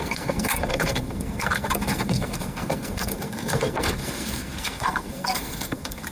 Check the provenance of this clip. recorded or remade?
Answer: remade